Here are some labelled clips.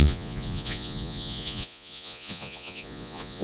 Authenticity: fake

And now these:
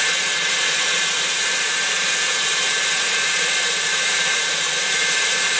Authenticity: fake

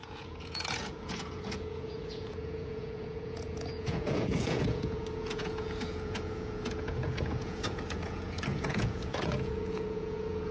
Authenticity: fake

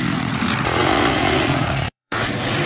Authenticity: fake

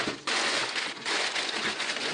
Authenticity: fake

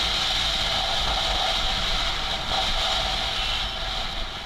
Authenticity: real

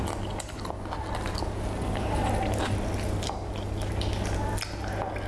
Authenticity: real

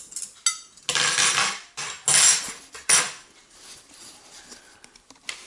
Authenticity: real